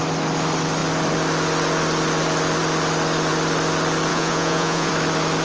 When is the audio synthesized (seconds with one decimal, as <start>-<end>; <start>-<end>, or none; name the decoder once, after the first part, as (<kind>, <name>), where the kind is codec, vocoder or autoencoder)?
4.1-4.9 (vocoder, Vocos)